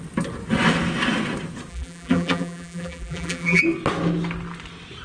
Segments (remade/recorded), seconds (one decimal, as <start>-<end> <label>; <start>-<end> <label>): 0.0-1.7 recorded; 1.7-3.6 remade; 3.6-5.0 recorded